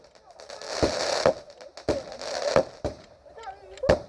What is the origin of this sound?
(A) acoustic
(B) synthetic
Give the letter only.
A